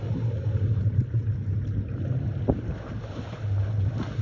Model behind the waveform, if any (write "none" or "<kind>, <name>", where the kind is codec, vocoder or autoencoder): none